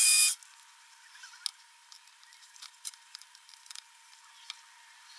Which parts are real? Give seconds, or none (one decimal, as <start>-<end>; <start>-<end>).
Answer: 0.0-1.5; 4.5-5.2

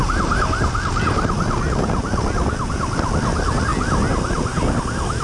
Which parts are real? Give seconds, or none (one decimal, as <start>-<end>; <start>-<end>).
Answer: 0.0-5.2

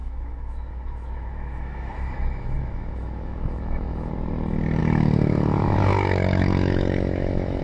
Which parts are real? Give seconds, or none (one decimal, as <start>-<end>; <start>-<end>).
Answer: 4.1-4.8

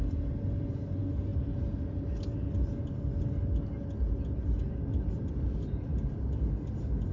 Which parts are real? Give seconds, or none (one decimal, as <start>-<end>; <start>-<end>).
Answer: 0.0-7.1

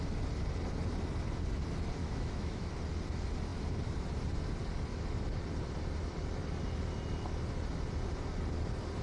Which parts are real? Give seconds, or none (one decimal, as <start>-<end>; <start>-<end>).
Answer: 0.0-2.0; 2.7-9.0

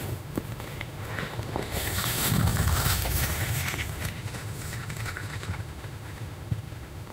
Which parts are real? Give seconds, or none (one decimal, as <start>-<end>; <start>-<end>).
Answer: none